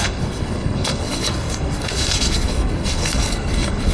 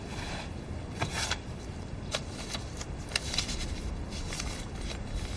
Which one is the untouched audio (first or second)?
second